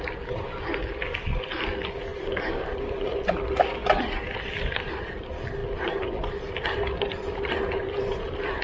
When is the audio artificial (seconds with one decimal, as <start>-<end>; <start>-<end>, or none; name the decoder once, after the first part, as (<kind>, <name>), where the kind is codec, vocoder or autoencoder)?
none